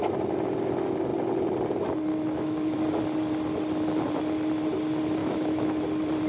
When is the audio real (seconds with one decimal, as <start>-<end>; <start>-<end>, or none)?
0.0-2.1; 2.8-5.2; 5.8-6.3